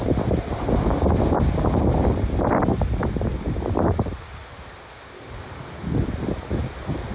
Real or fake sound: real